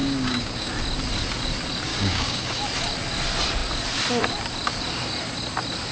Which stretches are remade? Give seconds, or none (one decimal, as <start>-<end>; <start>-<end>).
0.0-0.7; 1.9-2.6